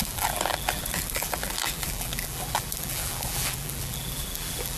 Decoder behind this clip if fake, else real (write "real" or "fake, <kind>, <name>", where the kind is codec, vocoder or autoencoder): fake, vocoder, BigVGAN v2